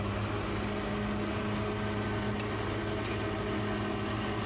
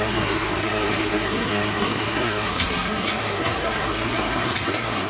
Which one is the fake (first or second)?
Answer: second